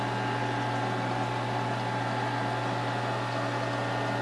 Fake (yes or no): no